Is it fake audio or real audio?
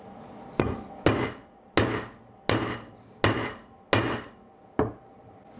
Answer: real